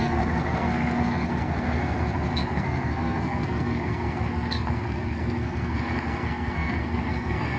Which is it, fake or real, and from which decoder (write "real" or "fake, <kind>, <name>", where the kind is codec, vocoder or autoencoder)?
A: fake, codec, SNAC